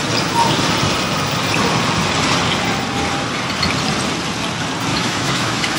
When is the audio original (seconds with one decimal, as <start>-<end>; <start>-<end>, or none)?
0.0-4.9